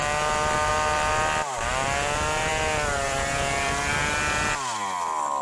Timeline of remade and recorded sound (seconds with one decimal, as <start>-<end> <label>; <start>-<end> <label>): 0.0-5.4 recorded